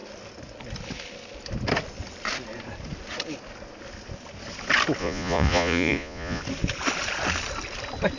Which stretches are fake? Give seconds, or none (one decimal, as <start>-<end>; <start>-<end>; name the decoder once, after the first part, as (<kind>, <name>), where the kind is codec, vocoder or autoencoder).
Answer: 5.0-6.4 (vocoder, Vocos)